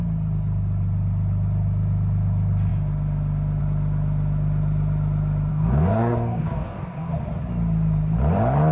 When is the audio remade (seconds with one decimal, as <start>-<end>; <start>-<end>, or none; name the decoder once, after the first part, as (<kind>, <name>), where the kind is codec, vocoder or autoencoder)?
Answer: 5.5-7.1 (codec, DAC)